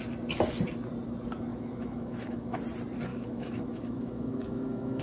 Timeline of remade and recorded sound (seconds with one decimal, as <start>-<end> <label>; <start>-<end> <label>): 0.0-1.5 recorded; 1.5-2.6 remade; 2.6-3.1 recorded; 3.1-5.0 remade